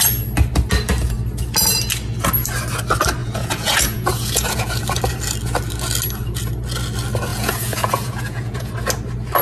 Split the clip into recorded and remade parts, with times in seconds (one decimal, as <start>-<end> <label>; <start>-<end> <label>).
0.0-3.2 recorded; 3.2-4.8 remade; 4.8-7.3 recorded; 7.3-8.7 remade; 8.7-9.4 recorded